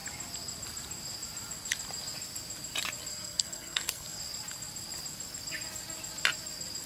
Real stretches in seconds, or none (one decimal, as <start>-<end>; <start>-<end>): 0.0-3.1; 4.2-6.9